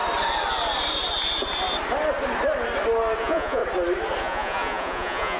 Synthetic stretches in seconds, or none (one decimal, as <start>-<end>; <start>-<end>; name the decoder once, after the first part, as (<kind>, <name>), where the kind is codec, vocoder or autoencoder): 3.2-3.6 (vocoder, Vocos); 4.2-5.4